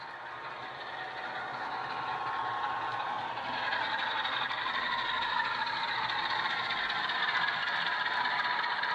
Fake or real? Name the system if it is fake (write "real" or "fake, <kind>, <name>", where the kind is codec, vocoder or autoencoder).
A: real